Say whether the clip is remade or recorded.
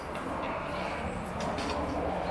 recorded